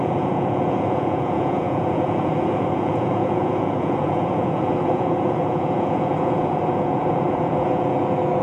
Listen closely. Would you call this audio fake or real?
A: fake